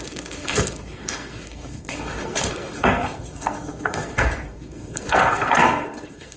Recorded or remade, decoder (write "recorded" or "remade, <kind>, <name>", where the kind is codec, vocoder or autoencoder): remade, codec, SNAC